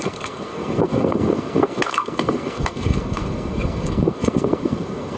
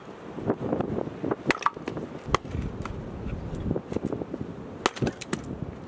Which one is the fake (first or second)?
first